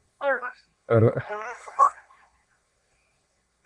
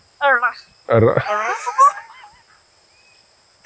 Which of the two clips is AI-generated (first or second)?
first